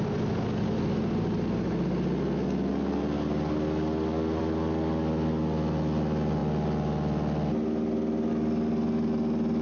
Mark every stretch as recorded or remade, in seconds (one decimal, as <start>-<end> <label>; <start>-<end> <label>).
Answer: 0.0-9.6 recorded